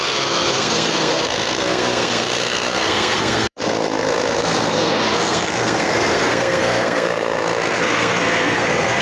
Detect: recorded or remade remade